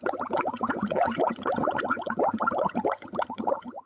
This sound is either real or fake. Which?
fake